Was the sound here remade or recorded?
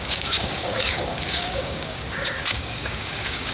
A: remade